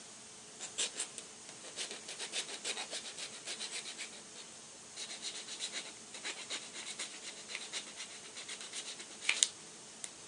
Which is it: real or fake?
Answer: real